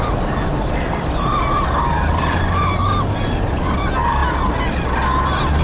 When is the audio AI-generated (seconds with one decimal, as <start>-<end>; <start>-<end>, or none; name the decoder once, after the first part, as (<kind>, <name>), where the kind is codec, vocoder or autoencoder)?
none